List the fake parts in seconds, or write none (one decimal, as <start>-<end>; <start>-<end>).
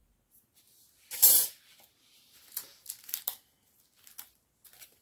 none